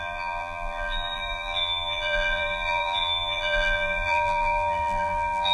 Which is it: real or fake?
fake